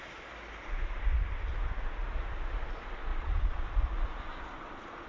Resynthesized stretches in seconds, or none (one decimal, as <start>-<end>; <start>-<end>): 3.1-3.6